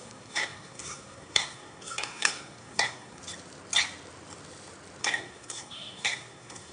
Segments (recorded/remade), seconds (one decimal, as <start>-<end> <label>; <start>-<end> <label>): 0.0-3.2 remade; 3.2-5.0 recorded; 5.0-6.7 remade